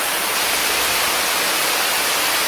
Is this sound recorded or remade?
recorded